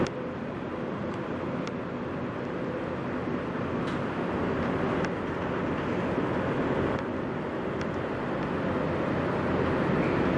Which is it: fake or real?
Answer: real